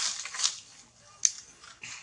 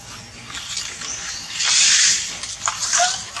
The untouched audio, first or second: first